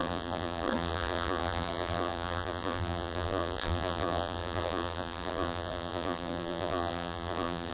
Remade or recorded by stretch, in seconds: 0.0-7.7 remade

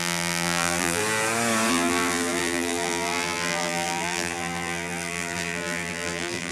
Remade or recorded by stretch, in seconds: 0.0-1.0 remade; 1.0-1.7 recorded; 1.7-6.5 remade

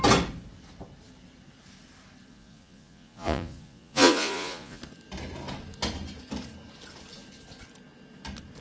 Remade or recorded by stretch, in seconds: 0.0-2.3 recorded; 2.3-4.8 remade; 4.8-8.6 recorded

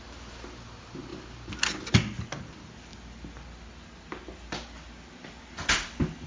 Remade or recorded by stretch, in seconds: 0.0-6.3 recorded